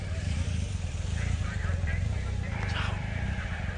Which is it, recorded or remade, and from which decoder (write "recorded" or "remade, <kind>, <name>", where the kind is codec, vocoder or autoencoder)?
remade, vocoder, BigVGAN v2